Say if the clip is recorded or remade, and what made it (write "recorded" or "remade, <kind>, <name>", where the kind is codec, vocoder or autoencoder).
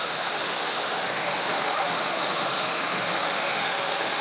remade, autoencoder, DAC-VAE